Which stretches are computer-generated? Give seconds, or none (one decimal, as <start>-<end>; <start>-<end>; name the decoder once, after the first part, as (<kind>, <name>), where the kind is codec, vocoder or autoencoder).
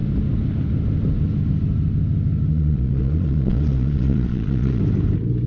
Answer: 2.5-4.8 (vocoder, Vocos)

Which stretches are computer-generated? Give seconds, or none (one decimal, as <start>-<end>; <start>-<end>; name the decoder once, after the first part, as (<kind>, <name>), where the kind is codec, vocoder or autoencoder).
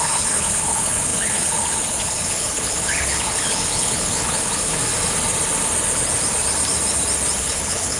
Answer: 0.0-4.8 (codec, HILCodec); 7.4-8.0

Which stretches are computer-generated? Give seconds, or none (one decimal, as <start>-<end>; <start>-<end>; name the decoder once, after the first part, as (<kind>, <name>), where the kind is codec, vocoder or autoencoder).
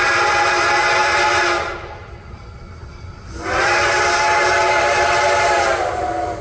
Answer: none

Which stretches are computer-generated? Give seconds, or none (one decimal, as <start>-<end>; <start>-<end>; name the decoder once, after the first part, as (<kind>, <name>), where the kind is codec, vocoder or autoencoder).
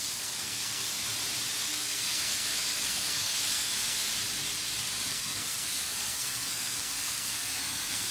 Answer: 0.0-1.0 (codec, SNAC); 1.6-4.1; 5.1-8.1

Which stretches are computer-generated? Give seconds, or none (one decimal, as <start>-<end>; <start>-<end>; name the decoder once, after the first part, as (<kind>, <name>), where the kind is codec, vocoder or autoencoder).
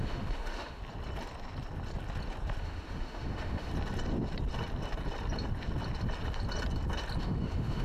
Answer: 0.0-0.8 (autoencoder, DAC-VAE); 2.6-3.7; 7.2-7.8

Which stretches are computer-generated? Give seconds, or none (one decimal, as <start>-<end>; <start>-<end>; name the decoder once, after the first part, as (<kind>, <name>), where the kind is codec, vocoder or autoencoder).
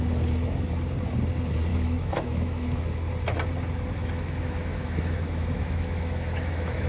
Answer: 1.7-2.8 (autoencoder, DAC-VAE); 4.0-6.9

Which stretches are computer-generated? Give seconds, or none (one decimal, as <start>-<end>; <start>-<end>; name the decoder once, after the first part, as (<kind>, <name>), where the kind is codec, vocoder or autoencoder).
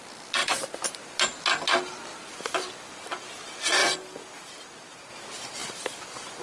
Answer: 0.4-1.0 (vocoder, BigVGAN v2); 2.1-2.7